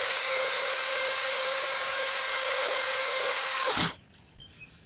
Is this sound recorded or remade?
remade